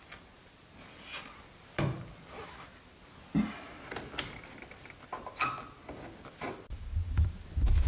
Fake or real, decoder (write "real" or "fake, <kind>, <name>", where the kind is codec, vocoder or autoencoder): real